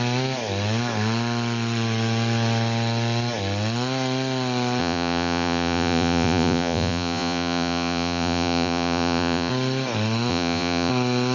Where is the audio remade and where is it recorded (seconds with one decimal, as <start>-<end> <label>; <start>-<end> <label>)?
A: 0.0-4.8 recorded; 4.8-9.5 remade; 9.5-10.3 recorded; 10.3-10.9 remade; 10.9-11.3 recorded

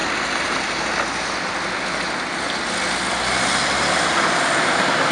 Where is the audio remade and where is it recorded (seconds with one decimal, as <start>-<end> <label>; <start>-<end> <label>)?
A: 0.0-5.1 recorded

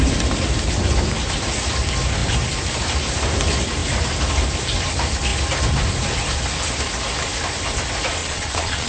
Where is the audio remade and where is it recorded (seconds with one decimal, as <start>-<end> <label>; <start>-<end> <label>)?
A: 0.0-8.2 recorded; 8.2-8.9 remade

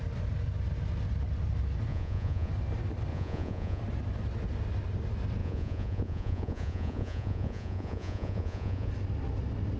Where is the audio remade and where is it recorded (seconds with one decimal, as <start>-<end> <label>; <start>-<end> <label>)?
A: 0.0-1.9 recorded; 1.9-2.5 remade; 2.5-3.1 recorded; 3.1-3.8 remade; 3.8-5.4 recorded; 5.4-8.9 remade; 8.9-9.8 recorded

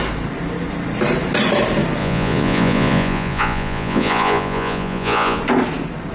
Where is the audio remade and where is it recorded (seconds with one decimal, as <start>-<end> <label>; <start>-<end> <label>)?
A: 0.0-2.0 recorded; 2.0-5.4 remade; 5.4-6.1 recorded